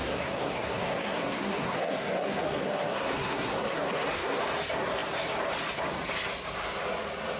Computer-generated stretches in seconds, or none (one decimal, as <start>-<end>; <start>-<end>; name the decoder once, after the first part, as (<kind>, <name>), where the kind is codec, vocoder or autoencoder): 0.0-4.4 (codec, SNAC)